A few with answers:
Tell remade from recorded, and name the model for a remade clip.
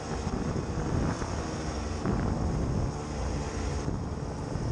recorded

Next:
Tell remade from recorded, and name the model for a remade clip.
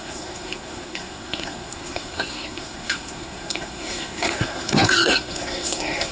remade, codec, SNAC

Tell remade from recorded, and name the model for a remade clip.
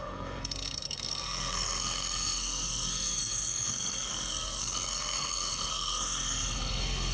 remade, codec, SNAC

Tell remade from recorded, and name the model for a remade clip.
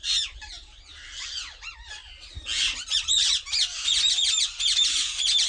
recorded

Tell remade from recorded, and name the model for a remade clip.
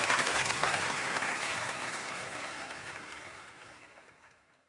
remade, codec, SNAC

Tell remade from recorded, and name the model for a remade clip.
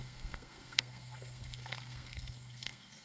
remade, codec, SNAC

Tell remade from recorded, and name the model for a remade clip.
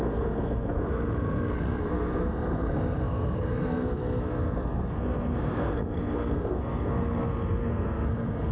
remade, codec, SNAC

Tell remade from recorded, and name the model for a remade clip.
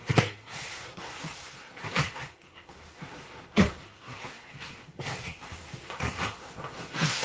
remade, codec, SNAC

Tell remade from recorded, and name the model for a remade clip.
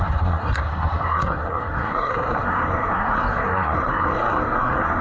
remade, codec, SNAC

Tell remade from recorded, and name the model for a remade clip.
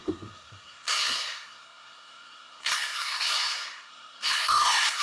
remade, codec, SNAC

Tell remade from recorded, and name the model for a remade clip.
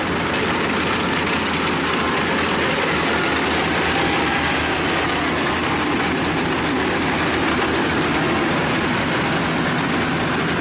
recorded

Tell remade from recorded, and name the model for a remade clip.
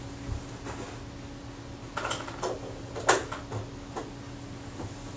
recorded